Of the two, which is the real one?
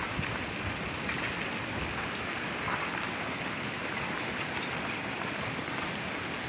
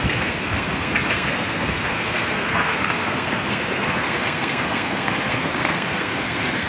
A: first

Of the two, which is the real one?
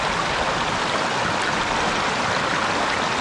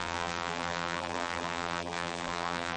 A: first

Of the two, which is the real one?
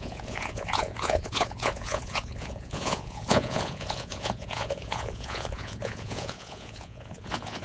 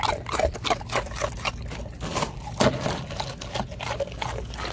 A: second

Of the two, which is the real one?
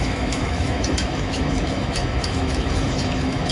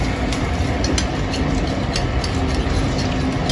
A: second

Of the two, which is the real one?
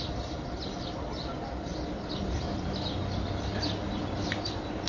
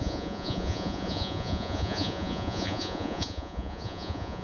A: first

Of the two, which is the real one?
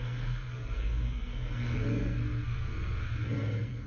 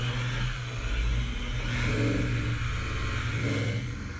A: second